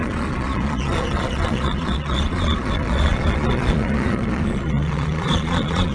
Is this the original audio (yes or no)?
no